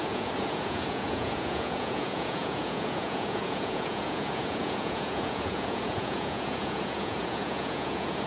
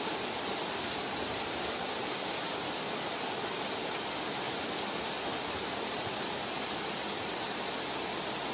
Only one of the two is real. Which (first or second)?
second